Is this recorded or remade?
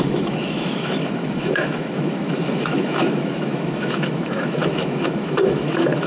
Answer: remade